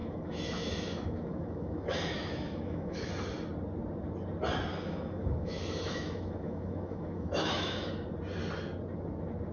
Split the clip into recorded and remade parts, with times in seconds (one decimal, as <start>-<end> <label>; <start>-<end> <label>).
0.0-3.1 remade; 3.1-4.7 recorded; 4.7-7.9 remade; 7.9-9.5 recorded